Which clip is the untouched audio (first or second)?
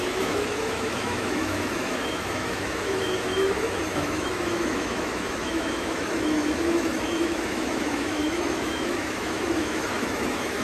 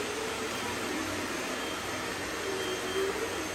second